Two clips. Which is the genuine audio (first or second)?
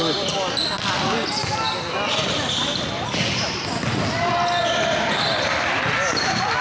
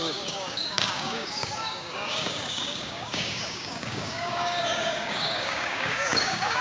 first